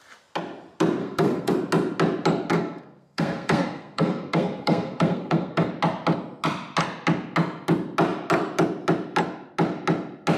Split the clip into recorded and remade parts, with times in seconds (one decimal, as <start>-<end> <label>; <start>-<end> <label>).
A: 0.0-1.0 recorded; 1.0-1.5 remade; 1.5-2.5 recorded; 2.5-5.7 remade; 5.7-10.4 recorded